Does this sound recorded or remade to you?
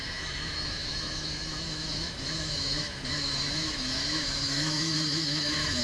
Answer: remade